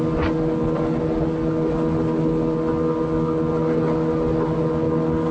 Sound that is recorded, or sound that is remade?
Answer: recorded